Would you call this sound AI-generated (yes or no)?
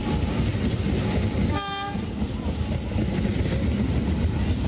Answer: no